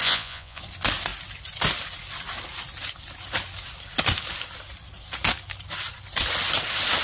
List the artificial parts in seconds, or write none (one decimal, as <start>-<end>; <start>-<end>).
0.0-0.6